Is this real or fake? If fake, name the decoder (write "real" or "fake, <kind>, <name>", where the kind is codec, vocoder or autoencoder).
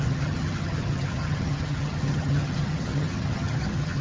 fake, vocoder, HiFi-GAN